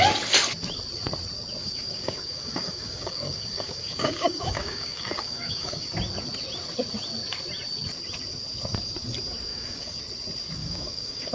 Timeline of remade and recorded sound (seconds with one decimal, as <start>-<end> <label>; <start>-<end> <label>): 0.0-1.6 recorded; 1.6-5.9 remade; 5.9-9.5 recorded; 9.5-10.0 remade; 10.0-10.6 recorded; 10.6-11.3 remade